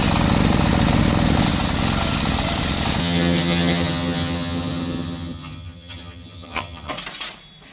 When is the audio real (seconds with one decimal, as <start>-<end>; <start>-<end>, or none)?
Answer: 0.0-3.0; 6.9-7.7